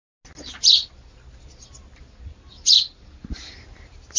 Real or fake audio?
real